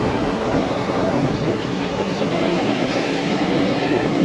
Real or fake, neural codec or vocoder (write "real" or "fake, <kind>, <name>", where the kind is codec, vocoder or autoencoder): fake, codec, SNAC